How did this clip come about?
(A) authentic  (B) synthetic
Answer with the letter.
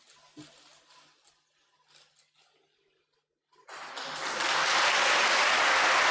A